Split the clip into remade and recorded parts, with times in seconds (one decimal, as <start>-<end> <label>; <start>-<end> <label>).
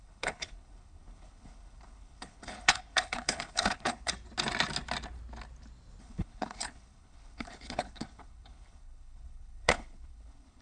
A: 0.0-4.1 remade; 4.1-6.0 recorded; 6.0-10.6 remade